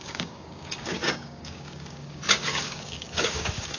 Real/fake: fake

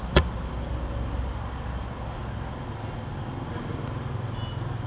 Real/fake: real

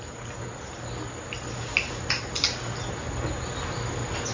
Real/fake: real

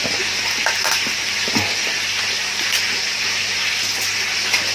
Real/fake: real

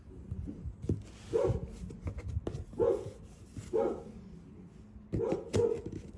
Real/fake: real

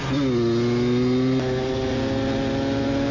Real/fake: real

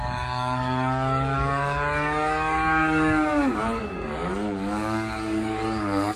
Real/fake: fake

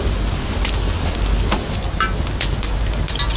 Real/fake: real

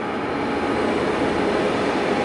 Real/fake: real